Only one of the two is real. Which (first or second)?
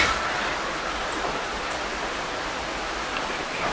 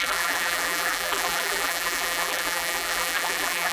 first